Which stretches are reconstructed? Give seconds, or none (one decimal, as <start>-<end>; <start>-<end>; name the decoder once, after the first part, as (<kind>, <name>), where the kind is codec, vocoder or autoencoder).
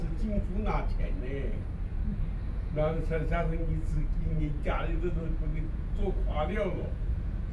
2.5-7.5 (vocoder, Vocos)